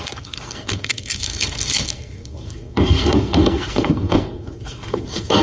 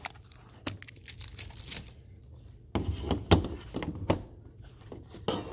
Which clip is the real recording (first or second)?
second